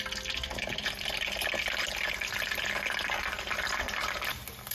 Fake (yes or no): no